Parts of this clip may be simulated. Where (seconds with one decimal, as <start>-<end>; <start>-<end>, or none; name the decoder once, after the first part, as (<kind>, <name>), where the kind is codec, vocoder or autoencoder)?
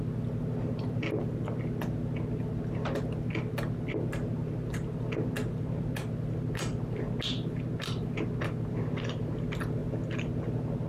none